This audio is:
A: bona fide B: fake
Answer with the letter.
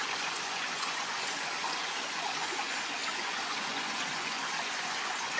B